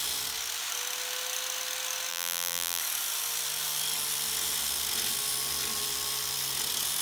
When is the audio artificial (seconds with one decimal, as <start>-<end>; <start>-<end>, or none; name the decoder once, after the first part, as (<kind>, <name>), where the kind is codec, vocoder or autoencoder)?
2.1-2.8 (vocoder, BigVGAN v2)